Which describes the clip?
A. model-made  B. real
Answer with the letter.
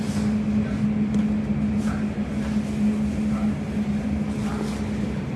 B